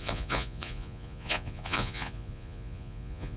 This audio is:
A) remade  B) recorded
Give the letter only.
A